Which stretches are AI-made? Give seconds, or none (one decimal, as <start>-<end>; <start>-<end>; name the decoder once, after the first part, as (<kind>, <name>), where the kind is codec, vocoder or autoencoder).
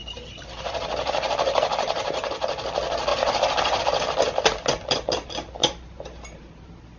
0.0-2.6 (vocoder, BigVGAN v2); 3.1-3.8; 5.6-6.5